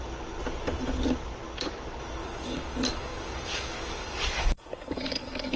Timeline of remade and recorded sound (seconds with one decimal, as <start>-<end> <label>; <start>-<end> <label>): 0.0-2.2 recorded; 2.2-5.6 remade